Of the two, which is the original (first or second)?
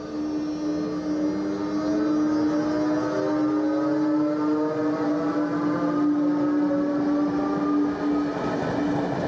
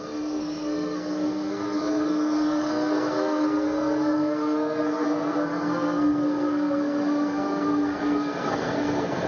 first